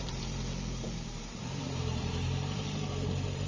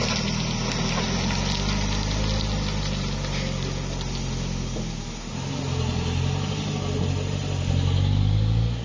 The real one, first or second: second